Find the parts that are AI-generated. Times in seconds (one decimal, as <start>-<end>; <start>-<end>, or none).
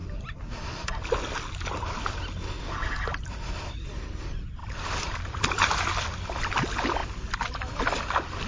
4.6-6.3; 7.0-7.6